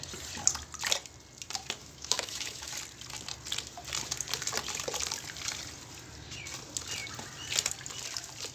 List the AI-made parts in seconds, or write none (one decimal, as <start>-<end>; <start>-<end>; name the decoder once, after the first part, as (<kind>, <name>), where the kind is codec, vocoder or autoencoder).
1.8-2.7 (autoencoder, DAC-VAE)